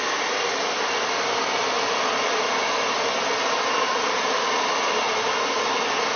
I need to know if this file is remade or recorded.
recorded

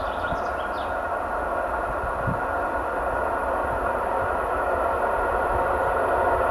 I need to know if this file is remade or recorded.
recorded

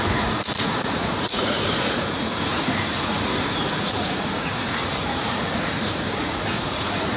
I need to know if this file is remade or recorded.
remade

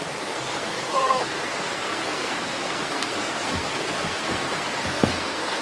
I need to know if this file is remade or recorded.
remade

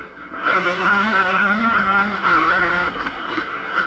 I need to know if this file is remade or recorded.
remade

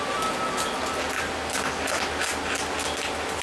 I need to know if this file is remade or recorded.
recorded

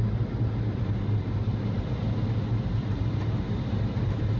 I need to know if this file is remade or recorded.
recorded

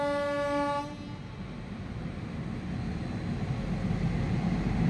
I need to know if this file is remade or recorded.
recorded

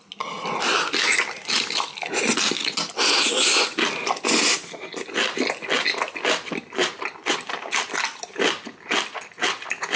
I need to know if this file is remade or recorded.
recorded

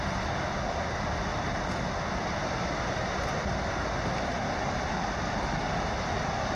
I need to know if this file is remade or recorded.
recorded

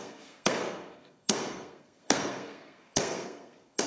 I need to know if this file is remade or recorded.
remade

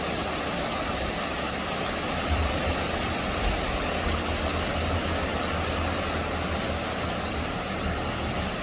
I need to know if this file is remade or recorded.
recorded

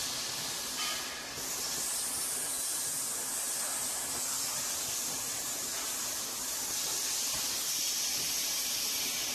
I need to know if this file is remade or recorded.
recorded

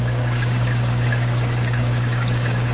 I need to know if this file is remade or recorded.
remade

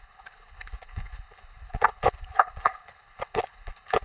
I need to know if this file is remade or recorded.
remade